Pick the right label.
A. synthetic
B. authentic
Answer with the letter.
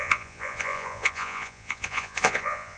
A